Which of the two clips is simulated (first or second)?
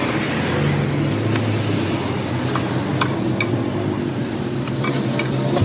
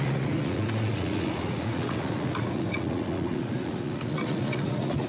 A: second